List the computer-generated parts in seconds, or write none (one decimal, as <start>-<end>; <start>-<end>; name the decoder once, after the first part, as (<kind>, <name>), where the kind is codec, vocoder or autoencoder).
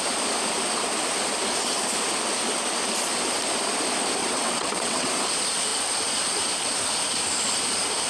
4.2-5.1 (vocoder, WaveNeXt)